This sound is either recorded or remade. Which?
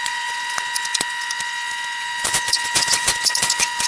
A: remade